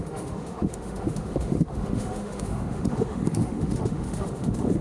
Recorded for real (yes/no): no